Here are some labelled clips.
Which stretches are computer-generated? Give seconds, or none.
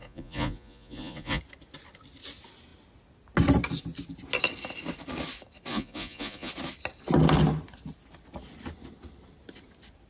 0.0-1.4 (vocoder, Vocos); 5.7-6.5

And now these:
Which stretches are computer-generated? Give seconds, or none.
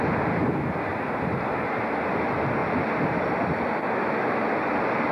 none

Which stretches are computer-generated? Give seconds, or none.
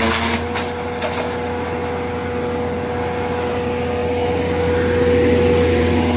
none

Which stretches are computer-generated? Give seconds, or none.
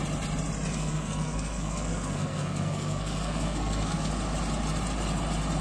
0.7-4.1 (codec, SNAC)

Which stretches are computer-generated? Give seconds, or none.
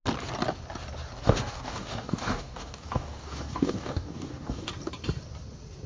1.2-4.7 (codec, DAC)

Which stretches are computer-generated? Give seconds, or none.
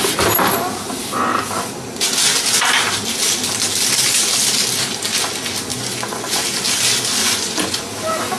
5.7-6.4 (vocoder, Vocos); 7.2-7.8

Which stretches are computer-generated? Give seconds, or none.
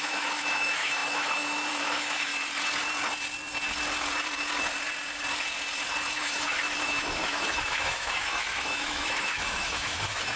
0.0-2.3 (autoencoder, DAC-VAE); 6.1-10.4